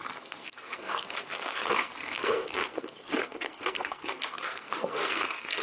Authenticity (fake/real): fake